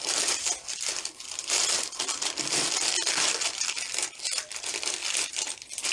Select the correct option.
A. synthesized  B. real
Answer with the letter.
B